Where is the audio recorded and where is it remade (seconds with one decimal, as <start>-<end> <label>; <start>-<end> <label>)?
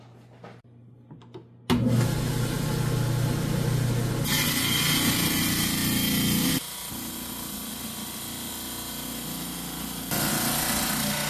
0.0-11.3 recorded